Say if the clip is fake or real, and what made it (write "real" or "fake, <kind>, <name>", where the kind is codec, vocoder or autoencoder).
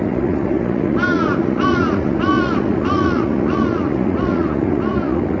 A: fake, vocoder, Vocos